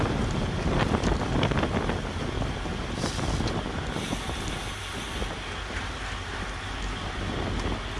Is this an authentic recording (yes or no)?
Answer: yes